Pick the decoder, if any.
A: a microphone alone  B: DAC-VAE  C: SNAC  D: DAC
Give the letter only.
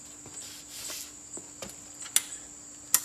A